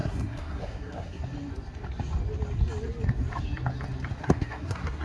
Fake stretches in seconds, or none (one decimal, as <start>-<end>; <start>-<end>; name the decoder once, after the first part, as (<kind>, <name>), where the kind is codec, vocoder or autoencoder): 0.0-1.2 (codec, SNAC); 4.2-5.0